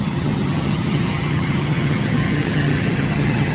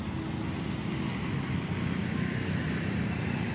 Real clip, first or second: second